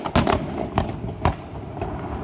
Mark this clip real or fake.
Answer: real